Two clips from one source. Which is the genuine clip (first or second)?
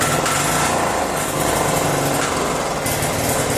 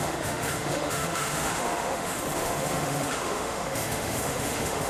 first